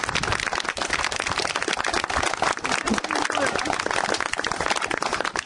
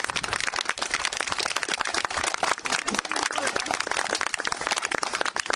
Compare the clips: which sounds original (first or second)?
first